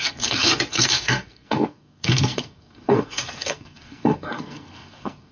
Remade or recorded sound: remade